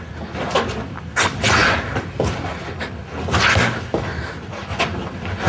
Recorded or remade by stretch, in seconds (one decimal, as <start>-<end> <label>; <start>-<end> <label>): 0.0-5.5 recorded